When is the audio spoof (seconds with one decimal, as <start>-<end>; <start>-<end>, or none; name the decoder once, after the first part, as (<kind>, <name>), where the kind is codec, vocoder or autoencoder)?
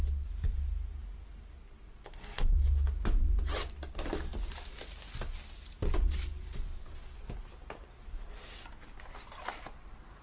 none